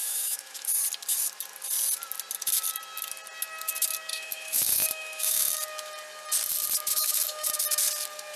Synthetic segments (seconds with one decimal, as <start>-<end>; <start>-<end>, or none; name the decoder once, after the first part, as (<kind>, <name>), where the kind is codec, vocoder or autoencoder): 0.0-0.8 (autoencoder, DAC-VAE); 4.1-5.5; 6.9-7.5